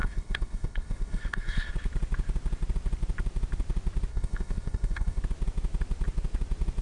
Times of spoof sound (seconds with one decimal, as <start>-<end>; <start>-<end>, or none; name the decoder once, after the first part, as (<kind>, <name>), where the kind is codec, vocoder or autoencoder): 0.0-1.7 (codec, HILCodec); 4.1-5.2